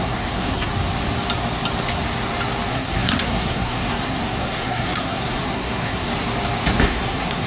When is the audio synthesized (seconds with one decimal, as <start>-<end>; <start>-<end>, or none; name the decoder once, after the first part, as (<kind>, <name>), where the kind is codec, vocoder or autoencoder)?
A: 0.0-0.7 (codec, SNAC); 2.7-6.1; 6.8-7.5